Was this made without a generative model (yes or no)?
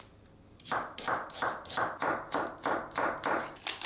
yes